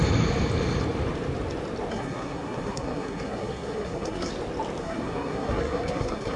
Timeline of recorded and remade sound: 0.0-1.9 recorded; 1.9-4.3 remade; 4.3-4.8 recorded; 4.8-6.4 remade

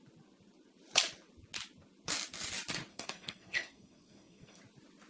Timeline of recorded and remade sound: 0.0-2.9 recorded; 2.9-4.6 remade; 4.6-5.1 recorded